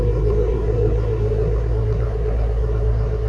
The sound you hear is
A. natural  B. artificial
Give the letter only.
B